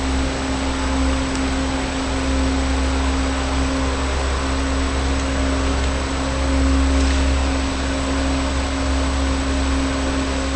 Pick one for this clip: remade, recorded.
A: recorded